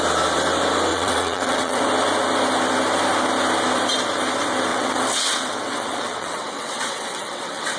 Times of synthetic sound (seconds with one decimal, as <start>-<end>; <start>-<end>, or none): 0.9-1.8; 4.7-7.8

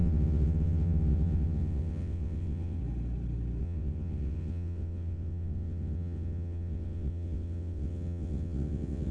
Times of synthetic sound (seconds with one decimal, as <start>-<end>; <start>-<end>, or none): 0.0-2.8; 3.6-9.1

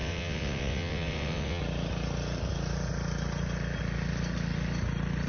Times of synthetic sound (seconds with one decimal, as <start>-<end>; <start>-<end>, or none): 0.0-1.6

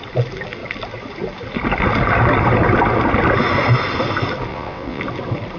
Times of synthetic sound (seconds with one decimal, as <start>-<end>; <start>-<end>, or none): 4.5-5.0

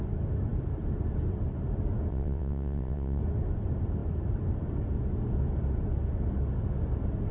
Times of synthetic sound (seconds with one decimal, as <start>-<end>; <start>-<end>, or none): 2.1-3.2